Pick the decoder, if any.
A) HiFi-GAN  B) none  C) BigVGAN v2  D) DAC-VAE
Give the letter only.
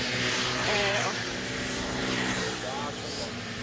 C